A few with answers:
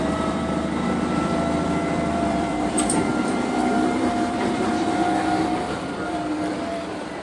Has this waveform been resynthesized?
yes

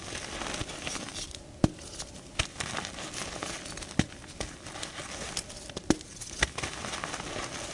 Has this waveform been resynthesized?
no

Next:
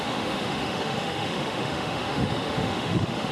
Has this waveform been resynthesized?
yes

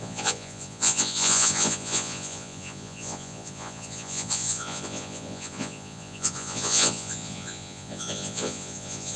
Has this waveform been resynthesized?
yes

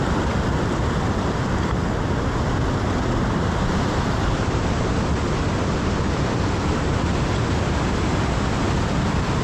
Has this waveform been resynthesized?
no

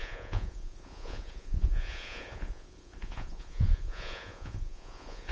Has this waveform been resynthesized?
yes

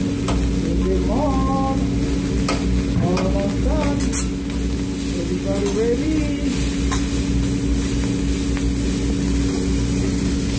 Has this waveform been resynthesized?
no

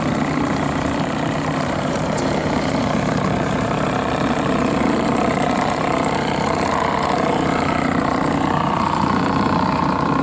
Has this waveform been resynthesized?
yes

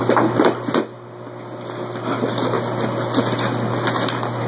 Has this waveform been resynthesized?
no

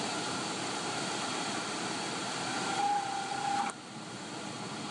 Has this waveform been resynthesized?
no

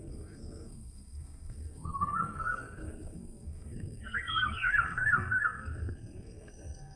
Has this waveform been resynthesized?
yes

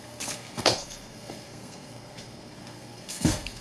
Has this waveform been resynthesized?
yes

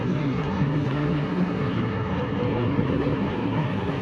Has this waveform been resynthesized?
yes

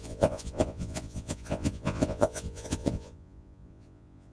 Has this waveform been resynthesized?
yes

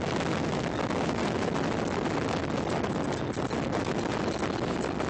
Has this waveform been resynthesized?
no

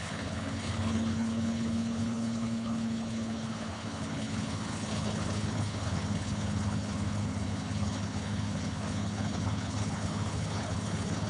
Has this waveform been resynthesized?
yes